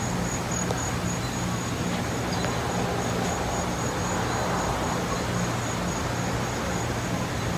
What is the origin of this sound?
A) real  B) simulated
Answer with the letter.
A